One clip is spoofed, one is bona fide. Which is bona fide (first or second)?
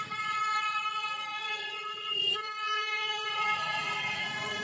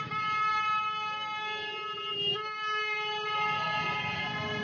second